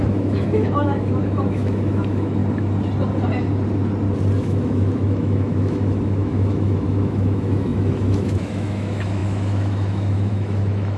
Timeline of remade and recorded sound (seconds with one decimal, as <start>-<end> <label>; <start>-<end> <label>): 0.0-2.4 remade; 2.4-4.4 recorded; 4.4-11.0 remade